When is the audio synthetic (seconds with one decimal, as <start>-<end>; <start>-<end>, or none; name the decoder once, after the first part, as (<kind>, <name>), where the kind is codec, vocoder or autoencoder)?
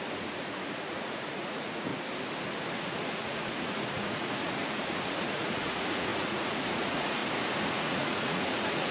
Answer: 0.0-1.9 (vocoder, Vocos); 2.8-7.2; 7.7-8.9